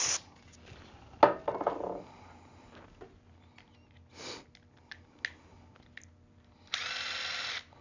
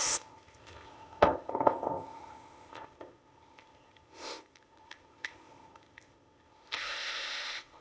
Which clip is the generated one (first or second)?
second